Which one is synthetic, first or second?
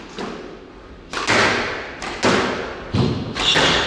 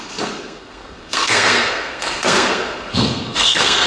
second